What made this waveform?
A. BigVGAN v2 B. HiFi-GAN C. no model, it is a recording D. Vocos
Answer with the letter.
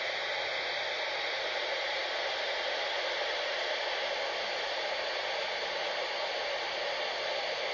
C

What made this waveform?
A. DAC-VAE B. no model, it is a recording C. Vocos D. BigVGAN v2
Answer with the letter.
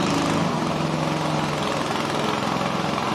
B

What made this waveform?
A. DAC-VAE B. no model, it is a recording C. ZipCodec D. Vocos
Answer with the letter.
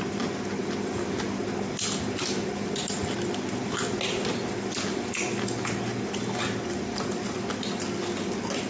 B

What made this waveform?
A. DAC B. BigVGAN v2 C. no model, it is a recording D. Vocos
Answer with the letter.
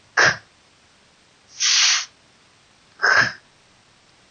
C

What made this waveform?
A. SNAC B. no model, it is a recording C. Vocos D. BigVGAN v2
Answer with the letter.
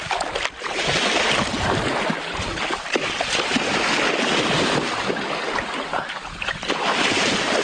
B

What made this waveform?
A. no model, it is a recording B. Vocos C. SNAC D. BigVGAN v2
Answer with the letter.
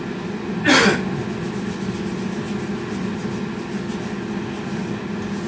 A